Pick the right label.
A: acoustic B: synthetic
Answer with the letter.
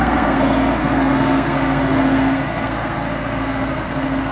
B